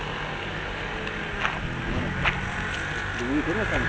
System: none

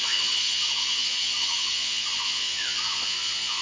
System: vocoder, Vocos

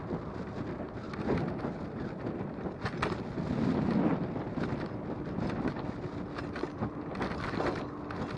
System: none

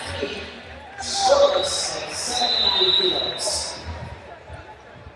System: vocoder, BigVGAN v2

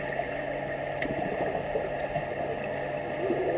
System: none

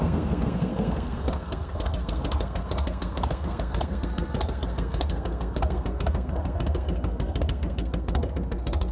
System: codec, SNAC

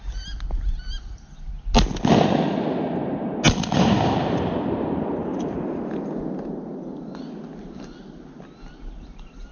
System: none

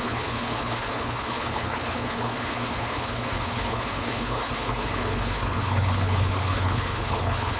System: codec, HILCodec